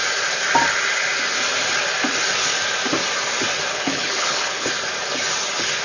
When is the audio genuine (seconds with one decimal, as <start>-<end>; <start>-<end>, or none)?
0.0-3.7; 4.7-5.8